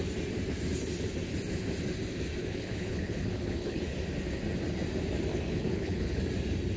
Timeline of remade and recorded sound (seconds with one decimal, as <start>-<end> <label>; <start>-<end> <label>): 0.0-2.4 recorded; 2.4-3.8 remade; 3.8-5.3 recorded; 5.3-6.2 remade; 6.2-6.8 recorded